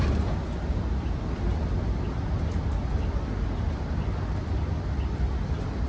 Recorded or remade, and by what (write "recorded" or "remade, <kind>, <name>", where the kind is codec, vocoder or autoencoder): recorded